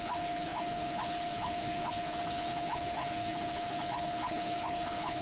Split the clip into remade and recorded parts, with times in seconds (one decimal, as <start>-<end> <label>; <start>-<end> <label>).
0.0-5.2 remade